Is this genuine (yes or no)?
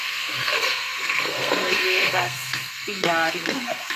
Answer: no